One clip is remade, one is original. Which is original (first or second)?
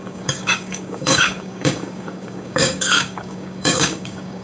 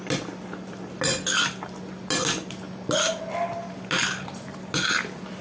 second